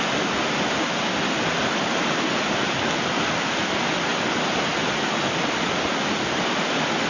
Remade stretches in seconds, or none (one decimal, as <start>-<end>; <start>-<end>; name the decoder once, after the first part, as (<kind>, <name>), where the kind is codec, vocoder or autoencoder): none